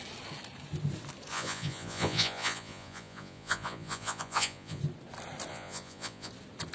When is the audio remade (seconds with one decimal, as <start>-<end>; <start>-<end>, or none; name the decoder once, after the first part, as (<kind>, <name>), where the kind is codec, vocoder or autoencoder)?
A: 1.3-4.8 (vocoder, Vocos); 5.5-6.3